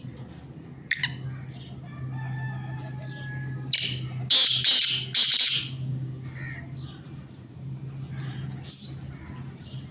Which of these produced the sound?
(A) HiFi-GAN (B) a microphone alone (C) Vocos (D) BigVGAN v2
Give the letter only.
B